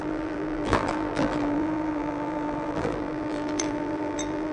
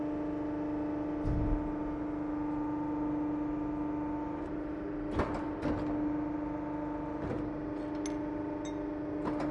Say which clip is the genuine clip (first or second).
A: second